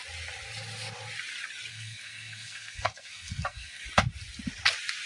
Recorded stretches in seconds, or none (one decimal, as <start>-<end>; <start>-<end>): 0.0-1.7; 3.8-5.1